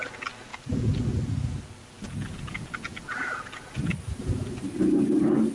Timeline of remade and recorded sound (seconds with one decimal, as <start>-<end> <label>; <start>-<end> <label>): 0.0-5.5 recorded